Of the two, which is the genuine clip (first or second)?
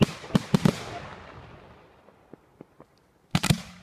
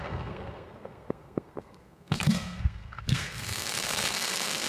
first